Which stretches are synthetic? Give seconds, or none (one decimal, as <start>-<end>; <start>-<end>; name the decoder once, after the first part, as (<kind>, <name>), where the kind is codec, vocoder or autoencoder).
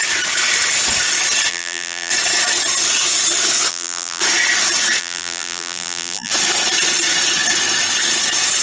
1.5-2.1 (vocoder, BigVGAN v2); 3.7-4.2; 5.0-6.3